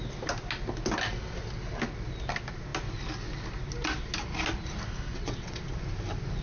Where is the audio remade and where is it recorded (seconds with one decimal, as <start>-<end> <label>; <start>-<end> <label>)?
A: 0.0-5.1 recorded; 5.1-5.6 remade; 5.6-6.4 recorded

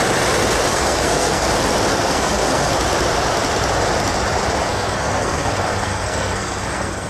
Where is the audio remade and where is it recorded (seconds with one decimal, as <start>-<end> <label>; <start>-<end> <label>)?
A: 0.0-0.7 recorded; 0.7-1.5 remade; 1.5-1.9 recorded; 1.9-2.7 remade; 2.7-4.7 recorded; 4.7-7.1 remade